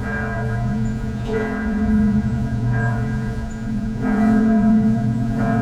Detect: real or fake fake